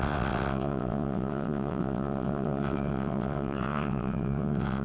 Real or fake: fake